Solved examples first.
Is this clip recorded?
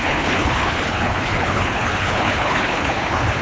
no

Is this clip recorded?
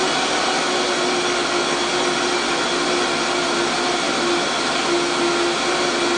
yes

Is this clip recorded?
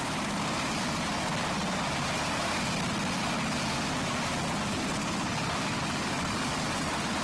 yes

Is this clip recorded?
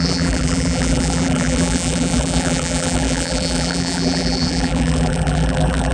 no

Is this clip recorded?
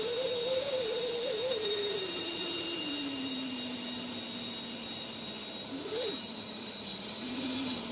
yes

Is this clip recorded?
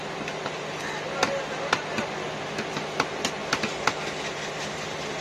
yes